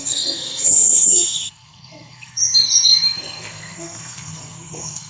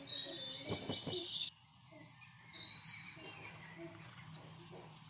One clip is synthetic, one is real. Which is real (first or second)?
second